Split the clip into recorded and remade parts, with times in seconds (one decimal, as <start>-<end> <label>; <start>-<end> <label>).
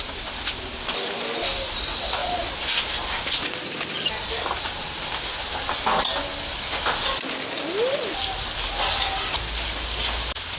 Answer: 0.0-10.6 recorded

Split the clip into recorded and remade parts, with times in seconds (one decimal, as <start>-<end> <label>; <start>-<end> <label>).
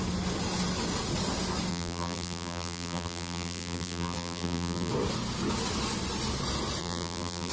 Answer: 0.0-1.7 recorded; 1.7-4.9 remade; 4.9-6.8 recorded; 6.8-7.5 remade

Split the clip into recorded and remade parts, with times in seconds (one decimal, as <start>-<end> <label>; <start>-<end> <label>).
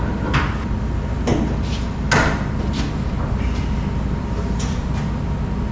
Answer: 0.0-5.7 recorded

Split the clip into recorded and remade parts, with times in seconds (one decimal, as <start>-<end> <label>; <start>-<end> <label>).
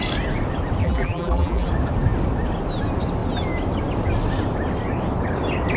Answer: 0.0-0.8 recorded; 0.8-1.7 remade; 1.7-5.8 recorded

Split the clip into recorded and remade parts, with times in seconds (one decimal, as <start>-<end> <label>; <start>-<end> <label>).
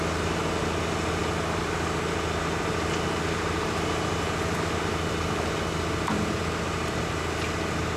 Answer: 0.0-8.0 recorded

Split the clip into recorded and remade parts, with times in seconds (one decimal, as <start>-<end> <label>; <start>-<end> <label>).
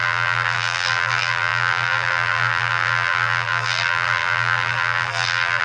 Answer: 0.0-5.6 remade